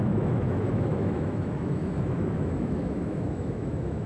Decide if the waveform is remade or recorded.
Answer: remade